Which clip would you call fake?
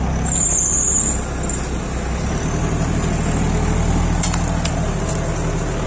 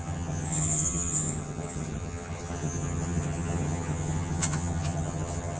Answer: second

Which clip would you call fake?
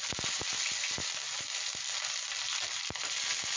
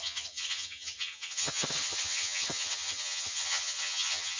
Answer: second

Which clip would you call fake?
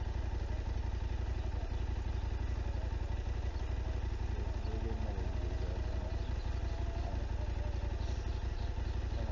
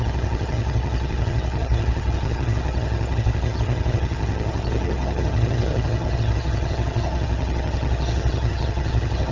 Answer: second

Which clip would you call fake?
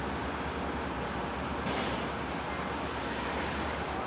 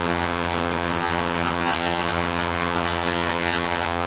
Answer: second